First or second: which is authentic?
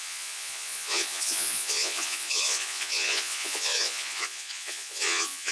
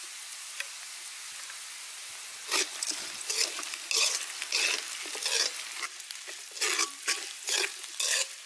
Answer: second